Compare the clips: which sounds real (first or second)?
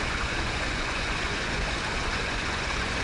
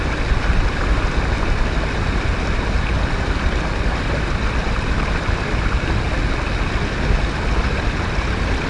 second